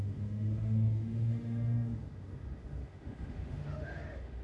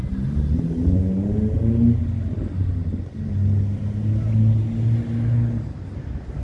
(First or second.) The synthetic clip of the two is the first